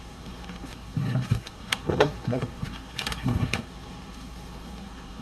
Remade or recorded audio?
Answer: remade